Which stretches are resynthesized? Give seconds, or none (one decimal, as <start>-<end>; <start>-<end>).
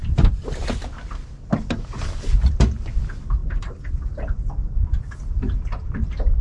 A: none